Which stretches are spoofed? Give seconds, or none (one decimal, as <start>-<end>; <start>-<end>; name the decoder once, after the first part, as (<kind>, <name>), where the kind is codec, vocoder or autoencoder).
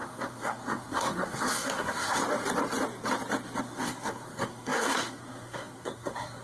0.0-2.2 (codec, SNAC); 3.6-6.4